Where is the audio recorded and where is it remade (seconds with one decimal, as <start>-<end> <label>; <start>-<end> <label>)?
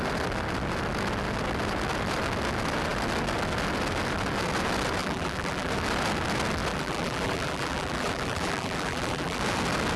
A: 0.0-5.0 recorded; 5.0-5.7 remade; 5.7-6.7 recorded; 6.7-9.4 remade; 9.4-10.0 recorded